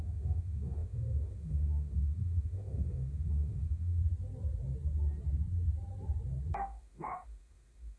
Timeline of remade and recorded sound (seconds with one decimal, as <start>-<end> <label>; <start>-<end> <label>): 0.0-4.0 remade; 4.0-6.6 recorded; 6.6-8.0 remade